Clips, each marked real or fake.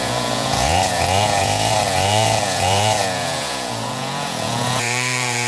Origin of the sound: fake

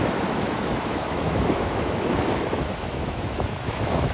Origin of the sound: fake